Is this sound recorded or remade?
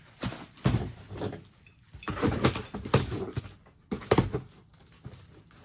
recorded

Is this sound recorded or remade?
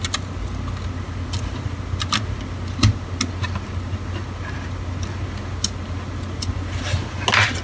recorded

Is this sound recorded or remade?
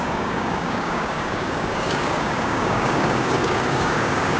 remade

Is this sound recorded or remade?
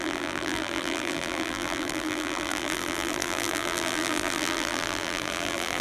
remade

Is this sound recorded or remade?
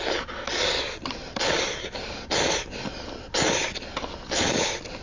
recorded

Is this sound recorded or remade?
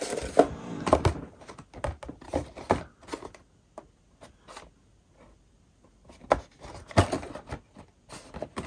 recorded